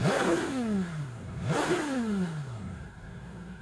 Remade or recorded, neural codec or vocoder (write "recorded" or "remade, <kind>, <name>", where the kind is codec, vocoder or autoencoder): remade, codec, SNAC